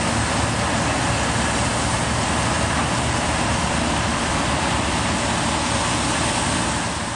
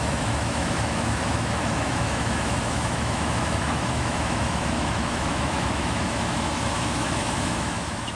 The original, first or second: first